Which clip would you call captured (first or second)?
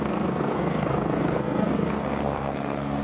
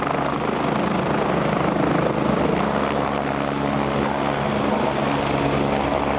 second